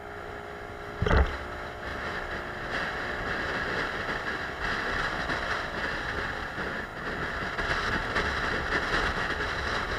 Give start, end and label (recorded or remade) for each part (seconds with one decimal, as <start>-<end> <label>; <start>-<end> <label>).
0.0-1.9 recorded; 1.9-2.6 remade; 2.6-10.0 recorded